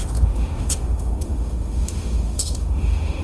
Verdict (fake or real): fake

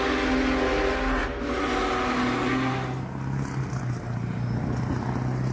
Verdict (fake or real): real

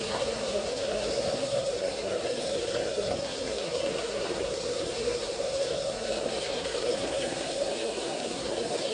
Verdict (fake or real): fake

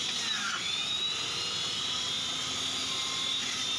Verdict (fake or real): real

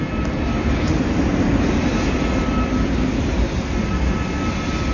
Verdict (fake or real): real